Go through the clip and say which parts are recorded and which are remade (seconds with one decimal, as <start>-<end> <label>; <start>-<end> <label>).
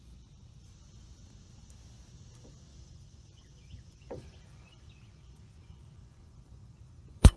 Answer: 0.0-2.7 recorded; 2.7-7.4 remade